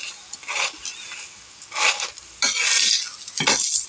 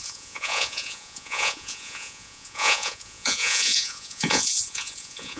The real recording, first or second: first